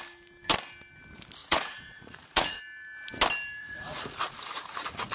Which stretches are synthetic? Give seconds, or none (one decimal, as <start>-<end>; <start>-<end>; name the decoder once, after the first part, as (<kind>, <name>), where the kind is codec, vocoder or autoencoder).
1.4-2.6 (vocoder, Vocos); 3.6-5.1